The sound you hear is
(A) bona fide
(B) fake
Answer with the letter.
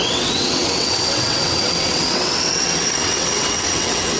B